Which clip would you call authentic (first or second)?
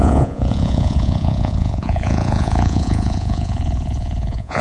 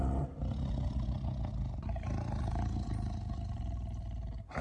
second